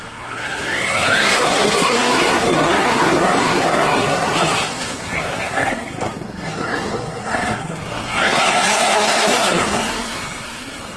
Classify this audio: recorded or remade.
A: remade